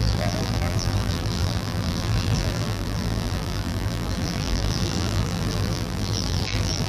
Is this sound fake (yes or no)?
yes